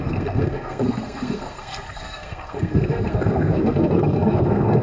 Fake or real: fake